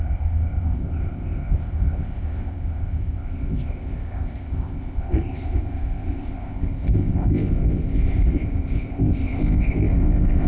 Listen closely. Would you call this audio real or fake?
fake